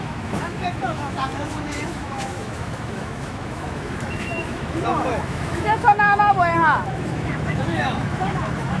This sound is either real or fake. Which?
fake